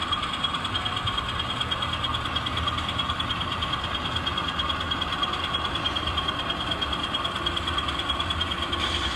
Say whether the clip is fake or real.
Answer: real